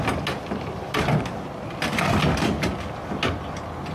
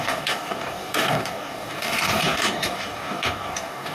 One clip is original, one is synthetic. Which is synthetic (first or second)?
second